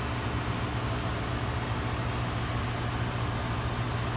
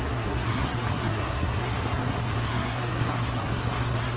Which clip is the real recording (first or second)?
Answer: first